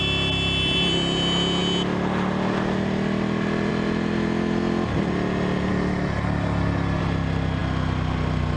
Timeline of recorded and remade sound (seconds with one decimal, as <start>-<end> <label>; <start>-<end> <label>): 0.0-5.7 recorded; 5.7-7.0 remade; 7.0-8.6 recorded